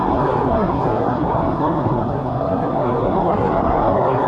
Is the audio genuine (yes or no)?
no